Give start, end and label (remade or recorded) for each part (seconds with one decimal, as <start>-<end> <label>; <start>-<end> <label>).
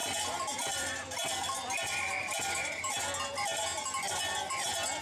0.0-3.0 remade; 3.0-5.0 recorded